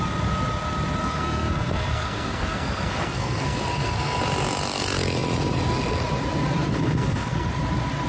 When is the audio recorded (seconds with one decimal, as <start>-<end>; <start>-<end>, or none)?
0.0-1.0; 4.2-6.7; 7.5-8.1